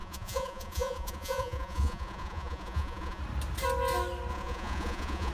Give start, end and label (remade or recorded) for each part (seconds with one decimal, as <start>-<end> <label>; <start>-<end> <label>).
0.0-3.2 remade; 3.2-4.3 recorded; 4.3-5.3 remade